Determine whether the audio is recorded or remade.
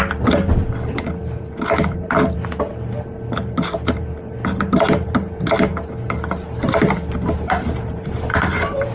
recorded